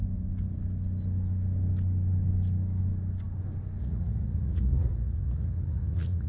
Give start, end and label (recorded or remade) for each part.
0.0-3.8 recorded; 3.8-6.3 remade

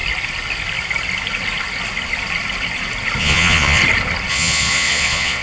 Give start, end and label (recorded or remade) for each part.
0.0-3.2 recorded; 3.2-3.8 remade; 3.8-4.3 recorded; 4.3-5.4 remade

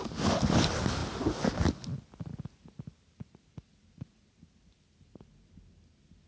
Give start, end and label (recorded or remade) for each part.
0.0-6.3 recorded

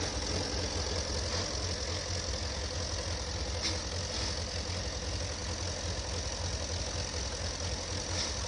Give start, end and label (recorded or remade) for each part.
0.0-8.5 recorded

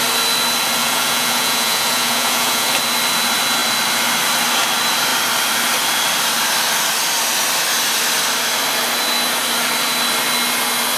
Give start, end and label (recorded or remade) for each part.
0.0-0.8 recorded; 0.8-2.7 remade; 2.7-11.0 recorded